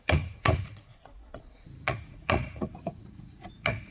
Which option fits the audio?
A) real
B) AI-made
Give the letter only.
B